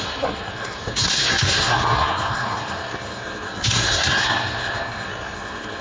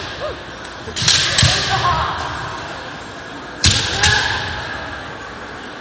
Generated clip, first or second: first